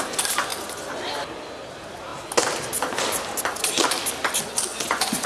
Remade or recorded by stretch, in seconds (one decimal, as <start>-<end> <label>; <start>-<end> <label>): 0.0-4.7 recorded; 4.7-5.3 remade

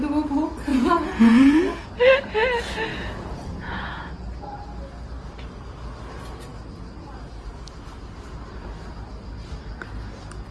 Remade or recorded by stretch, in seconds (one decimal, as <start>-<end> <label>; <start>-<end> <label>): 0.0-0.7 recorded; 0.7-1.6 remade; 1.6-2.9 recorded; 2.9-4.1 remade; 4.1-10.5 recorded